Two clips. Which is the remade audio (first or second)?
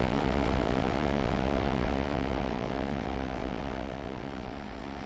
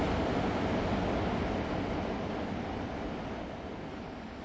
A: first